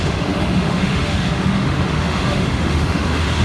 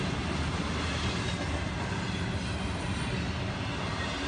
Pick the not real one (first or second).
first